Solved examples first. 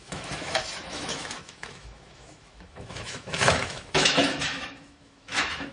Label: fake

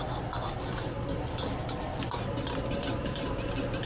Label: real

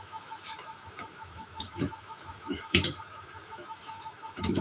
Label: fake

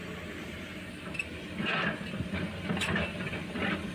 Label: real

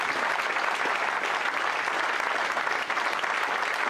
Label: real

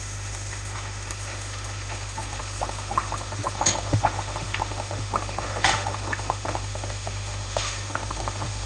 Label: fake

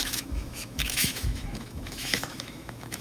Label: fake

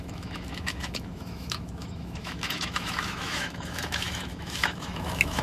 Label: fake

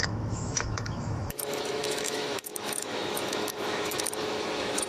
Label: fake